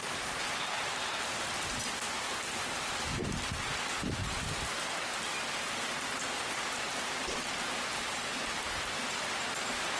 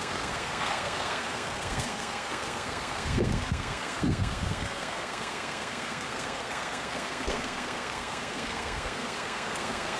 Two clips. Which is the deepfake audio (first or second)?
second